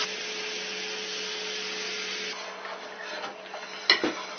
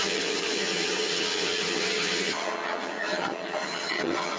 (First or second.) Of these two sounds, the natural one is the first